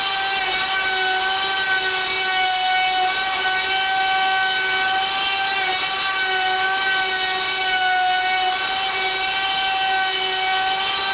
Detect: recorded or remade recorded